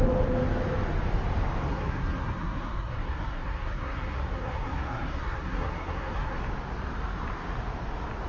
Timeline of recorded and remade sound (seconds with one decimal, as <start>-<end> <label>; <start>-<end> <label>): 0.0-1.7 recorded; 1.7-6.4 remade; 6.4-8.3 recorded